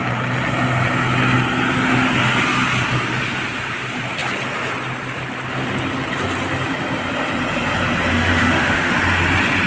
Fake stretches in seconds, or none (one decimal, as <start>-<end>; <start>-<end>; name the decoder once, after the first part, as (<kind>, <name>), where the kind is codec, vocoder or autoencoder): 8.1-8.9 (autoencoder, DAC-VAE)